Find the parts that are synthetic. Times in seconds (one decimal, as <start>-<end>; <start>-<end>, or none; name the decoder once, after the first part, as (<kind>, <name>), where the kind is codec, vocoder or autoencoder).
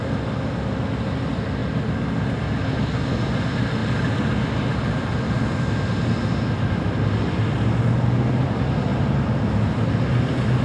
none